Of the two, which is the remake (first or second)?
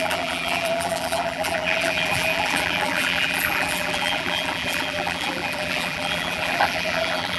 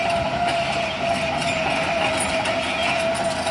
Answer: first